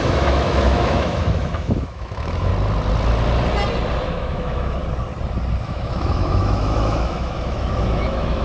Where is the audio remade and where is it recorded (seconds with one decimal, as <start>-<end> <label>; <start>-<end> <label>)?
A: 0.0-2.5 remade; 2.5-4.1 recorded; 4.1-4.8 remade; 4.8-5.6 recorded; 5.6-8.4 remade